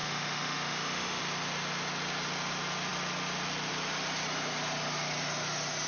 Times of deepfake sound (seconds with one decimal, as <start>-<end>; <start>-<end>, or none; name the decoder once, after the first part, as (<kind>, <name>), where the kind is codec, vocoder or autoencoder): 0.0-1.2 (autoencoder, DAC-VAE)